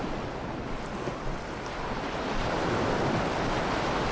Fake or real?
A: real